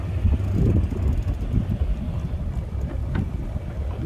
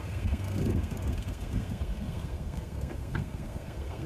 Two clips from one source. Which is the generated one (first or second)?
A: second